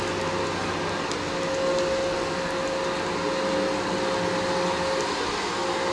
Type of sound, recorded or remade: recorded